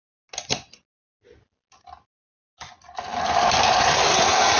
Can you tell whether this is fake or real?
real